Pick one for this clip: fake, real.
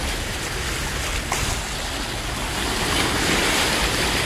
real